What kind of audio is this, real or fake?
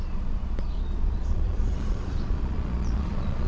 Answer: fake